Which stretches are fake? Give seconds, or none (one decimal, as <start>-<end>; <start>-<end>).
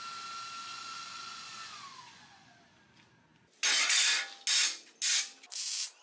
0.7-2.5